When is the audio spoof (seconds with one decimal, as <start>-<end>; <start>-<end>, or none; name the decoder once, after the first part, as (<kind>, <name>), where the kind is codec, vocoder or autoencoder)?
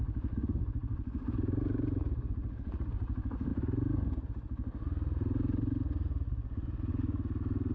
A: none